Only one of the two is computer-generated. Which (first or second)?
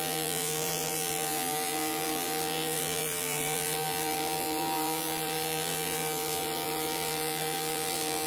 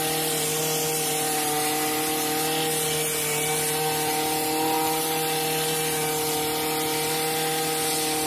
first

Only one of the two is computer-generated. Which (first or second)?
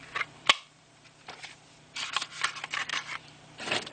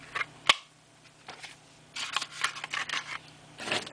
first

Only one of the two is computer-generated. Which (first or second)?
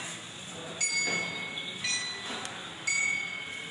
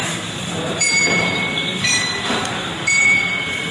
second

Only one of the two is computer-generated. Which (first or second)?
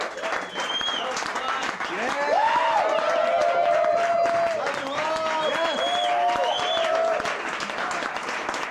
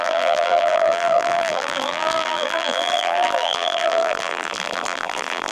second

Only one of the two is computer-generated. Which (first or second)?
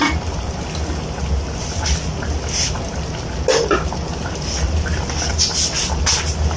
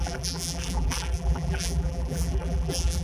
second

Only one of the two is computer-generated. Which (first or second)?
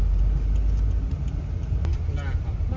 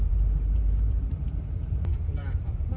second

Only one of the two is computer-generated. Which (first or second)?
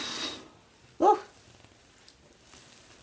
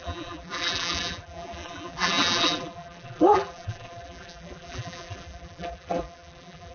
second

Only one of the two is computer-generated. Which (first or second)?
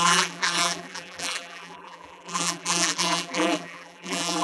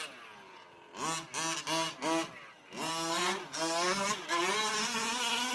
first